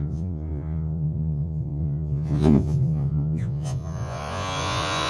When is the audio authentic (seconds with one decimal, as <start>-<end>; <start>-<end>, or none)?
none